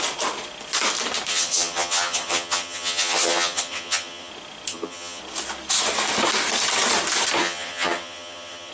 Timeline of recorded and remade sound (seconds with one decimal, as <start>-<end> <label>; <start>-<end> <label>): 0.0-1.3 recorded; 1.3-4.3 remade; 4.3-4.7 recorded; 4.7-5.2 remade; 5.2-7.4 recorded; 7.4-8.7 remade